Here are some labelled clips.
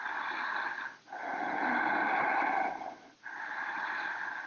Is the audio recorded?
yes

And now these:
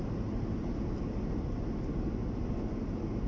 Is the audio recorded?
yes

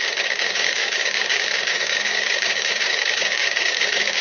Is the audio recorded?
no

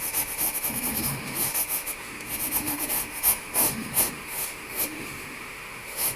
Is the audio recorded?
no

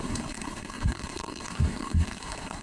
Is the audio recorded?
no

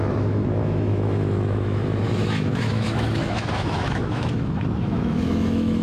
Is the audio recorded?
no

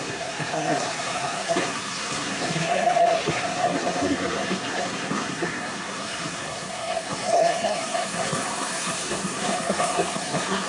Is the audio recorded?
no